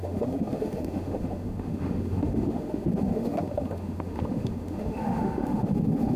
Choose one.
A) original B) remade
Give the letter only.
B